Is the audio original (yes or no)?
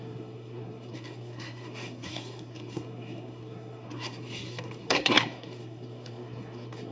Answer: no